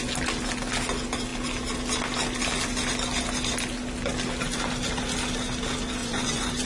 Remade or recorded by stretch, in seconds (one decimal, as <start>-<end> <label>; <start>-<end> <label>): 0.0-6.0 recorded; 6.0-6.7 remade